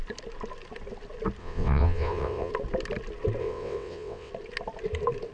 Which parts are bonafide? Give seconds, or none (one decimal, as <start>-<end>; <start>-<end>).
0.0-1.4; 2.5-3.4; 4.3-5.3